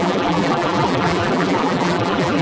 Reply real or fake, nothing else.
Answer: fake